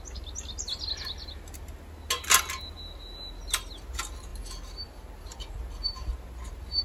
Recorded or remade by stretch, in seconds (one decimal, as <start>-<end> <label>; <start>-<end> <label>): 0.0-6.8 recorded